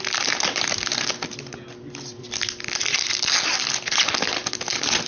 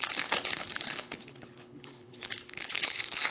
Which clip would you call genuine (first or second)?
first